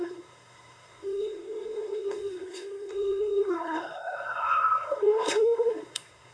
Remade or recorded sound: remade